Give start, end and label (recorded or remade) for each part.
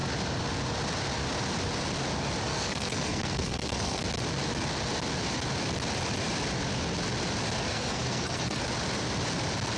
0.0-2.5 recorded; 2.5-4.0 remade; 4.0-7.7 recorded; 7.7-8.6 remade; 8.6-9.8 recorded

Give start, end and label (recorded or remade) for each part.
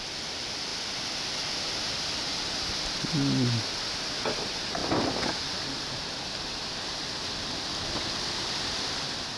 0.0-9.4 recorded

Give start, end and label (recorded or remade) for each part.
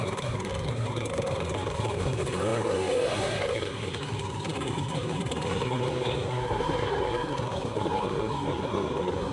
0.0-9.3 remade